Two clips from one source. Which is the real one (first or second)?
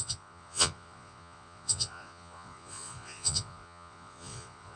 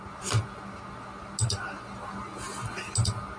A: second